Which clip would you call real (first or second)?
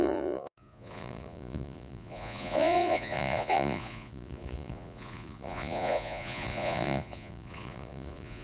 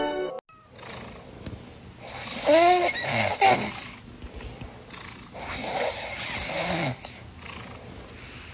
second